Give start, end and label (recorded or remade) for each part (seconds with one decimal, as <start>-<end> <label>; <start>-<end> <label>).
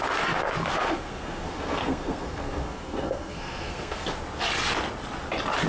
0.0-0.7 recorded; 0.7-4.1 remade; 4.1-5.7 recorded